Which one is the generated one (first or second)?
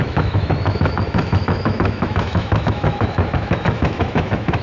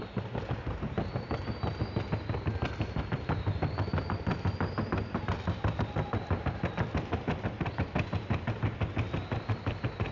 first